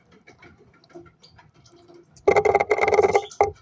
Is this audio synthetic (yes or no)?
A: no